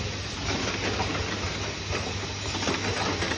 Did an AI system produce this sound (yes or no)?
no